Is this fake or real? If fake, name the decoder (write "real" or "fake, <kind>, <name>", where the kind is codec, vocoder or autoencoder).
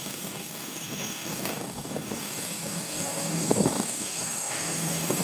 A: fake, codec, DAC